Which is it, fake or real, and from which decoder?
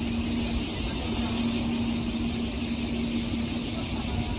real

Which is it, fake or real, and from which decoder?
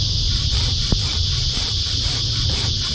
fake, vocoder, BigVGAN v2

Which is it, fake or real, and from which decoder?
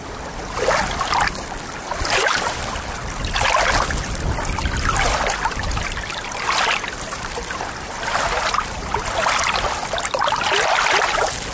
real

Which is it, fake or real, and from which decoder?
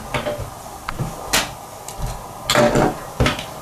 real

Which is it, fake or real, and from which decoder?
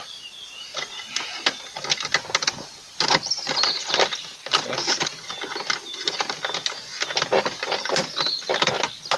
real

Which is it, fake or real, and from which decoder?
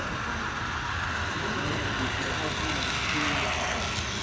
real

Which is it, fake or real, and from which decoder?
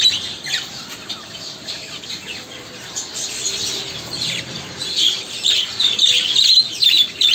fake, vocoder, BigVGAN v2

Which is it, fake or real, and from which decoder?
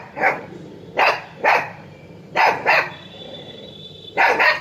fake, vocoder, BigVGAN v2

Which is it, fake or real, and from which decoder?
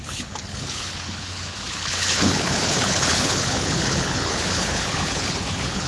fake, codec, HILCodec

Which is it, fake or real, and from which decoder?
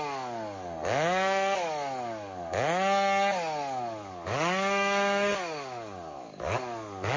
fake, codec, DAC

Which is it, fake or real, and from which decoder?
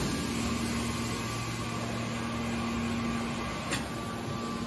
real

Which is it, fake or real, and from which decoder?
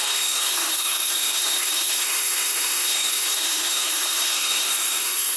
fake, codec, SNAC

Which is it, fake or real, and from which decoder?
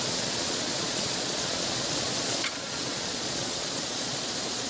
fake, vocoder, Vocos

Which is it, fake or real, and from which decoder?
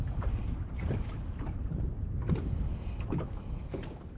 real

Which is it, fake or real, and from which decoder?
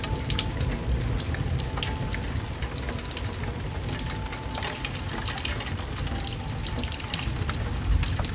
real